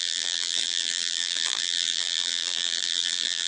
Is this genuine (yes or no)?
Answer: no